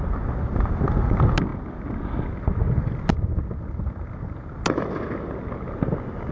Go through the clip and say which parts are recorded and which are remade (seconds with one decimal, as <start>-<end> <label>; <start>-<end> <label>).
0.0-6.3 recorded